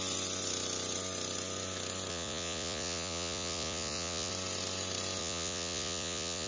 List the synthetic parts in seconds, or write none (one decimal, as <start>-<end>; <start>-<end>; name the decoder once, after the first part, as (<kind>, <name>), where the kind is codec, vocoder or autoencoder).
2.1-4.3 (vocoder, Vocos); 5.2-6.5